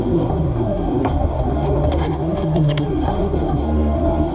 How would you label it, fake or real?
fake